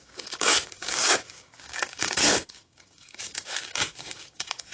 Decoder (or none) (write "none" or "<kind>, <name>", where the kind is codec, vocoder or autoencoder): codec, DAC